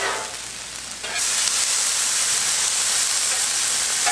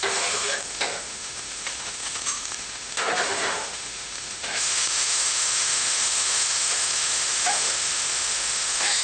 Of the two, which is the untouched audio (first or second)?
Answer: first